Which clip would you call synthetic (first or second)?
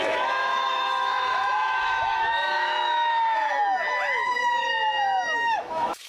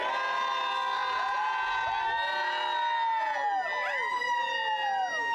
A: first